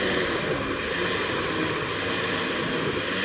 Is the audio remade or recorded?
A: recorded